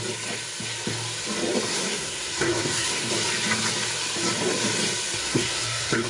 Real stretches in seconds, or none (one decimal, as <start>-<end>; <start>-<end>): 0.0-1.7; 3.1-5.2